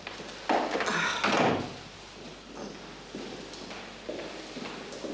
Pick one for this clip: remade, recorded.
recorded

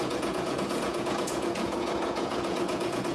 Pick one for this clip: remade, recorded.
remade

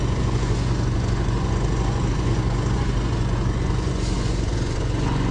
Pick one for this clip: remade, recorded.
remade